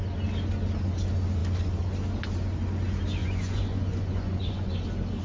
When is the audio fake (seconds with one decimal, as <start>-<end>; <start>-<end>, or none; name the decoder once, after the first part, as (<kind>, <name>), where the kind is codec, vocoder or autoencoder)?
3.2-4.7 (vocoder, Vocos)